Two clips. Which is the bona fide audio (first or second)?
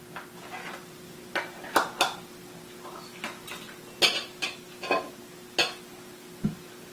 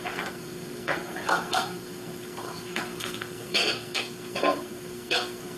first